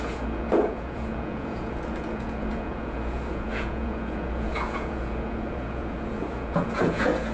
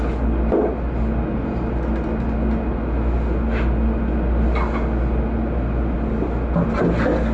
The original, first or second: second